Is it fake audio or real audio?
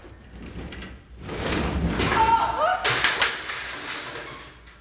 real